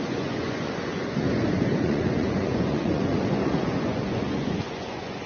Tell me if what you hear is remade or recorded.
remade